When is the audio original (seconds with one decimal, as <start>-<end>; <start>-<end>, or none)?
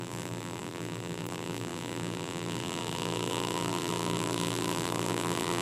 none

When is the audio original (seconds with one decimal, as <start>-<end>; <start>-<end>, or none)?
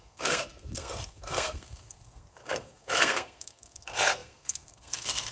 none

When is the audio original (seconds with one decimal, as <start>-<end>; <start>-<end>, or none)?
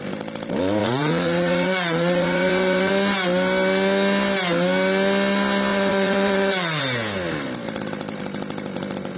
0.0-0.8; 2.9-5.7; 6.8-9.2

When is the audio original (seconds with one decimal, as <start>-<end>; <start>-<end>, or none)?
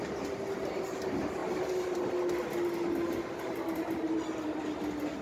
0.0-5.2